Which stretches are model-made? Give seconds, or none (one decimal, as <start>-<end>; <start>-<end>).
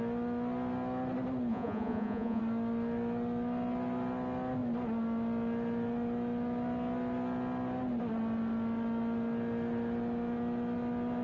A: 1.5-2.4